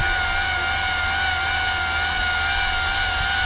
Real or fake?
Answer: real